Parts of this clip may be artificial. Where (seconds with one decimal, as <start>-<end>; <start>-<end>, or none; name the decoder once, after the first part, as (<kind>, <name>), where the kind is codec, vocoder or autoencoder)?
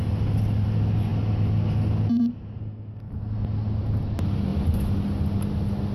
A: 2.6-3.1 (codec, SNAC)